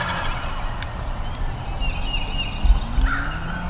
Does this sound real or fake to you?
real